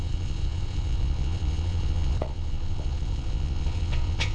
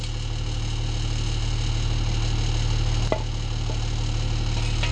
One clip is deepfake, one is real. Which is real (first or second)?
second